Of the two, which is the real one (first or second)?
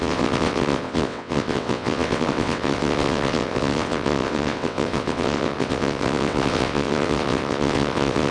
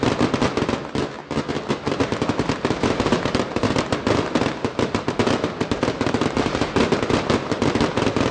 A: second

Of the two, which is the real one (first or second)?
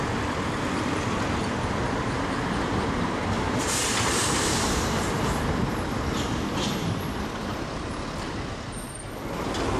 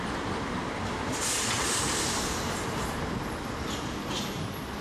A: second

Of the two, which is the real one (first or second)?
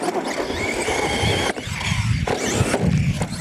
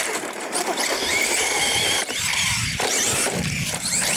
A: first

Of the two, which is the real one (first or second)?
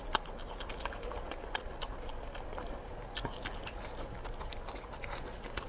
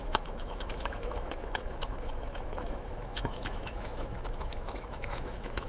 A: first